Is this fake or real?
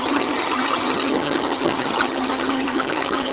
fake